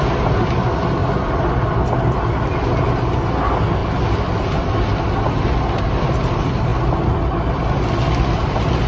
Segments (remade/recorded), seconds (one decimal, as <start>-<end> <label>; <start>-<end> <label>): 0.0-1.0 recorded; 1.0-1.7 remade; 1.7-8.9 recorded